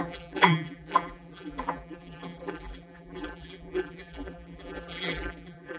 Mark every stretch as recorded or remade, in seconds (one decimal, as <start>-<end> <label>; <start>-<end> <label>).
0.0-5.8 remade